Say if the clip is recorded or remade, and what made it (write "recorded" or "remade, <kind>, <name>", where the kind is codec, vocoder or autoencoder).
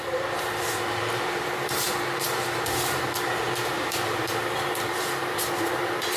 remade, vocoder, BigVGAN v2